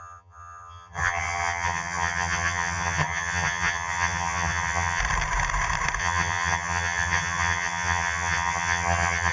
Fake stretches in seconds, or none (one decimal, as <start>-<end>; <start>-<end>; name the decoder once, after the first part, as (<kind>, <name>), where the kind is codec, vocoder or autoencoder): 0.0-5.0 (vocoder, HiFi-GAN); 6.0-9.3

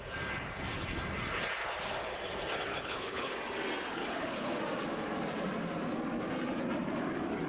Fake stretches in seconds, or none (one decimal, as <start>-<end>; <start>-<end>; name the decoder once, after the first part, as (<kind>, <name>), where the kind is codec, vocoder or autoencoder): 2.7-3.3 (codec, HILCodec); 3.9-4.6

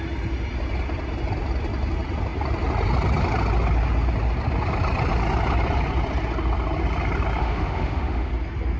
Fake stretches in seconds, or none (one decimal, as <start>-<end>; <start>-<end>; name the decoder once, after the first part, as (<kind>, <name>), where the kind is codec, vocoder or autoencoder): 7.4-8.3 (autoencoder, DAC-VAE)

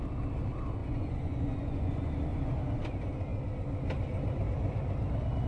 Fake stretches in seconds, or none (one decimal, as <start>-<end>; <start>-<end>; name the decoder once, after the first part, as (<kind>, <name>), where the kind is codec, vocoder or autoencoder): 0.8-2.4 (vocoder, Vocos)

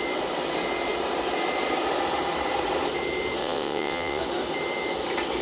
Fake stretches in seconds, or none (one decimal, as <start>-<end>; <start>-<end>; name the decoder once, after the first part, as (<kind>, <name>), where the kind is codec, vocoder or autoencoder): 3.4-4.2 (vocoder, WaveNeXt)

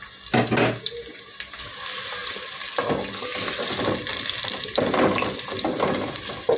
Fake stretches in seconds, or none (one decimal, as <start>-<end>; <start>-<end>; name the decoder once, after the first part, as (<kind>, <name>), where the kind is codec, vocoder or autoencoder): none

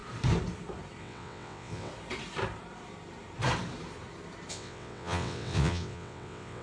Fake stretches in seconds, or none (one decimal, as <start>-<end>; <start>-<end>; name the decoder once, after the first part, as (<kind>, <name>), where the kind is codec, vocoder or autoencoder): 1.0-1.9 (vocoder, WaveNeXt); 4.5-6.6

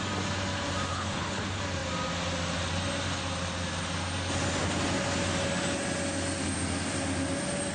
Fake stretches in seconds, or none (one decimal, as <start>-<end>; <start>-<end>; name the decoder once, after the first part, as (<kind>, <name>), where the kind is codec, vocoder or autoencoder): 0.9-1.4 (codec, HILCodec)